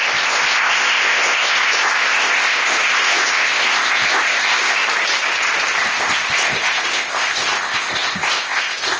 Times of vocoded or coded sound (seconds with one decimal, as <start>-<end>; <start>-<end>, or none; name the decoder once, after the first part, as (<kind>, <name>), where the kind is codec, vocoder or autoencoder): 0.0-4.8 (codec, ZipCodec); 5.8-9.0